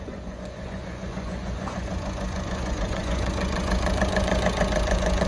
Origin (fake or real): fake